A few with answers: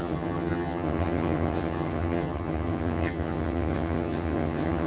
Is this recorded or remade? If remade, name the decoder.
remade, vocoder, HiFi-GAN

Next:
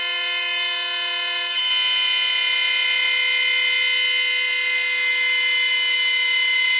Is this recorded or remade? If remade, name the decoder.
recorded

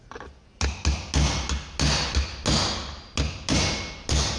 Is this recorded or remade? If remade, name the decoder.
recorded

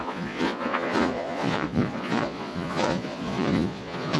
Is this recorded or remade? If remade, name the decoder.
remade, vocoder, Vocos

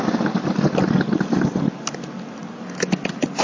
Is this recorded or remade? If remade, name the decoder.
recorded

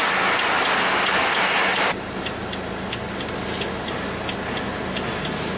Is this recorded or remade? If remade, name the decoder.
recorded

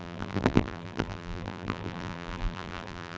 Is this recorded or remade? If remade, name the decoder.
remade, vocoder, BigVGAN v2